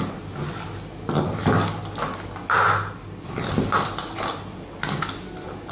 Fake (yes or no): no